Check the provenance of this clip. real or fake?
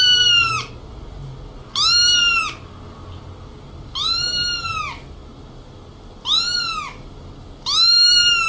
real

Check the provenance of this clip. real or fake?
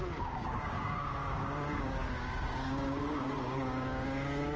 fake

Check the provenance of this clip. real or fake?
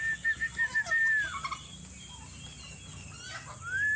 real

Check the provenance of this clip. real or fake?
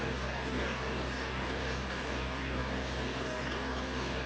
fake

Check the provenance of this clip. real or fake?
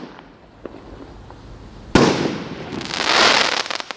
real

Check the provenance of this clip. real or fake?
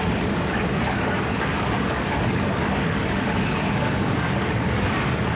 fake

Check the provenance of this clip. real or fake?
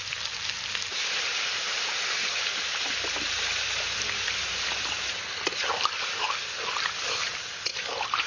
real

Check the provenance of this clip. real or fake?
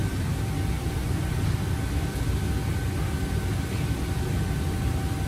real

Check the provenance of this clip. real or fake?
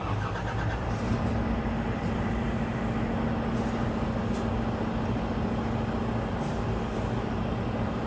real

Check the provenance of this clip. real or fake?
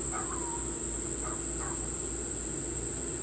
real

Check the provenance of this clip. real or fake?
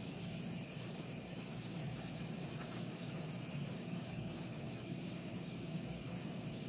fake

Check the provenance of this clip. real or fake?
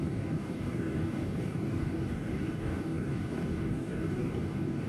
fake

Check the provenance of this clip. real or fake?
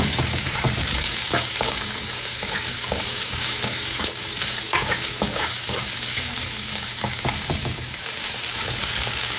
fake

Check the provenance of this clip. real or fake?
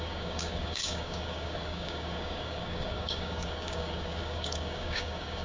fake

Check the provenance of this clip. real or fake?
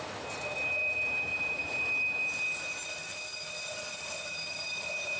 real